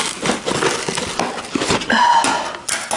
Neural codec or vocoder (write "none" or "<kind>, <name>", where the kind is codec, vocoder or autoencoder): none